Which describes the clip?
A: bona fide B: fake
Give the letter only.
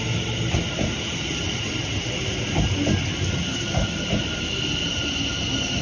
A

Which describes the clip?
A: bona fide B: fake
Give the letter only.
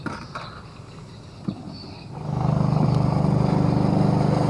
A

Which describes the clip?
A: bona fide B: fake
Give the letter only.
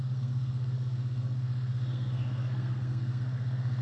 B